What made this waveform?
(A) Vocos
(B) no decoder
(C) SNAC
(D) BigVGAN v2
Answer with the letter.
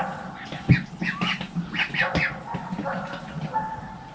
B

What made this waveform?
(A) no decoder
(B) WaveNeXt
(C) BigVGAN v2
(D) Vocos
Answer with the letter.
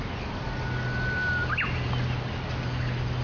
A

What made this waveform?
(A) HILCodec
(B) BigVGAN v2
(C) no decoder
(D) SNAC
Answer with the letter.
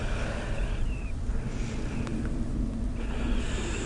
C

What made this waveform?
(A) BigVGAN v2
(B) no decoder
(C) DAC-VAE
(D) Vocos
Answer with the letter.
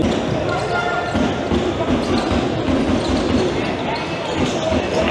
B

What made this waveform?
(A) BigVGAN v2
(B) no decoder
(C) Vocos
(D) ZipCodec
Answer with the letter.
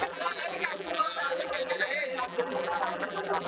A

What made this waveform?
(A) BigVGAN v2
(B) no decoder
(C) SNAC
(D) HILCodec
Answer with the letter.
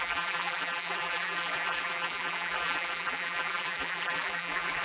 A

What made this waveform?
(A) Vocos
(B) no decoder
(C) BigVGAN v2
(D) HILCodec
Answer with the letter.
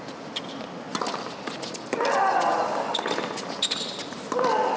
B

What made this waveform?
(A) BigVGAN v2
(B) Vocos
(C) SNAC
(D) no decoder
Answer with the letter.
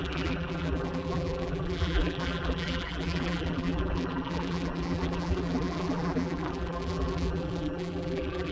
A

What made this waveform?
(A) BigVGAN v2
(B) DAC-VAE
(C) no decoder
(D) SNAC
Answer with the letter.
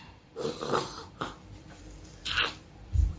A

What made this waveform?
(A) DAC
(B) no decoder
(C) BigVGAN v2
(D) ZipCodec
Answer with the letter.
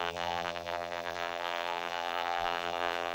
C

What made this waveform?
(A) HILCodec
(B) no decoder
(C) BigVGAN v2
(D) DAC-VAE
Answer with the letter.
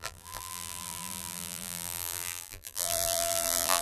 C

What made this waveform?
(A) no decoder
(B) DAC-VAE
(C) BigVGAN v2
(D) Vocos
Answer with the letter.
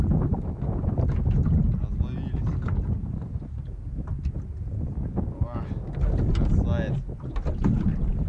A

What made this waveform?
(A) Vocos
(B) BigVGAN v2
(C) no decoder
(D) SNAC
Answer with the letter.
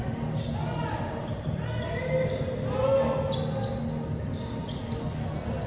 C